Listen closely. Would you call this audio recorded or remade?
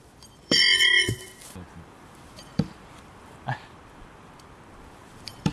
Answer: remade